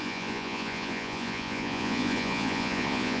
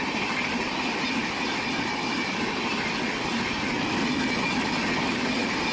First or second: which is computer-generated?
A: first